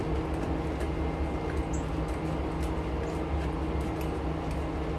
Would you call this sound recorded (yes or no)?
yes